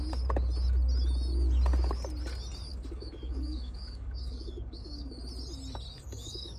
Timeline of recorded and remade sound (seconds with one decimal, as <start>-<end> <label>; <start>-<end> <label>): 0.0-2.7 recorded; 2.7-5.2 remade; 5.2-5.9 recorded; 5.9-6.6 remade